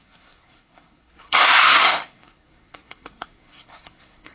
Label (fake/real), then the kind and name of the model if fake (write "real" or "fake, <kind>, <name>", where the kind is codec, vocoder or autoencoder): fake, codec, SNAC